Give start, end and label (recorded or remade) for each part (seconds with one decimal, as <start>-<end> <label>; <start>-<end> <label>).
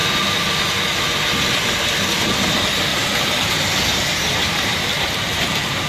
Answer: 0.0-1.5 recorded; 1.5-2.9 remade; 2.9-3.8 recorded; 3.8-5.9 remade